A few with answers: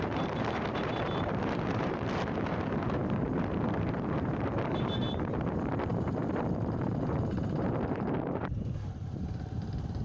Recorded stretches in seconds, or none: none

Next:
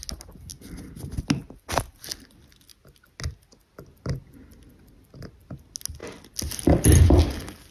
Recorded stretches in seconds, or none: 0.0-7.7

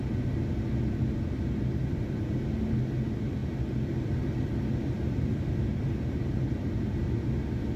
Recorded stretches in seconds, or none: 0.0-5.7; 7.0-7.8

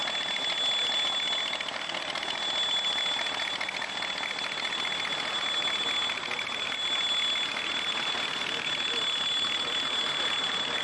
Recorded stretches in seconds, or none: 0.0-7.5; 8.1-10.8